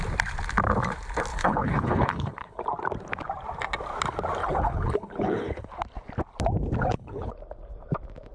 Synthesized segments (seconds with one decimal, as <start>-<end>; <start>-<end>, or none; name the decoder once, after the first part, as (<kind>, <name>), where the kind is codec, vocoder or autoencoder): 1.3-2.6 (codec, HILCodec); 4.4-5.7; 6.8-7.3